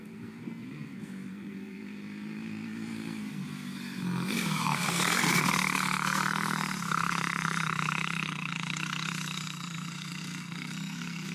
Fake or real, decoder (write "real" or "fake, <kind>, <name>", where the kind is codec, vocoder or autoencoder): fake, codec, SNAC